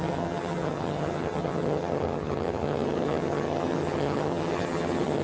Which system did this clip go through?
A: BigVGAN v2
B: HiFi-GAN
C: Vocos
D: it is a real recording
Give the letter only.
B